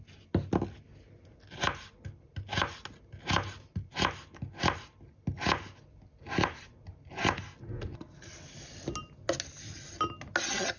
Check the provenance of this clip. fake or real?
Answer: real